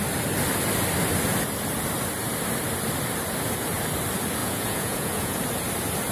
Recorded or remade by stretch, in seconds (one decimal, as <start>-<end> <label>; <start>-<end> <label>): 0.0-4.4 recorded; 4.4-5.4 remade; 5.4-6.1 recorded